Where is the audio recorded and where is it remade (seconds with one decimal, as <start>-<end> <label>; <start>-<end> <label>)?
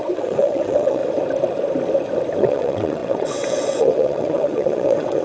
0.0-1.0 remade; 1.0-2.4 recorded; 2.4-5.2 remade